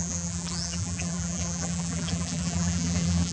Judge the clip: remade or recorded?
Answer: remade